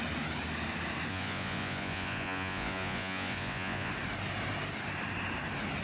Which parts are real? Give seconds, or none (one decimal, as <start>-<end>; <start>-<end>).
0.0-1.1; 3.9-5.8